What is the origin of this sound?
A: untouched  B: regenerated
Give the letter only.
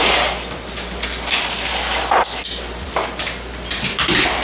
A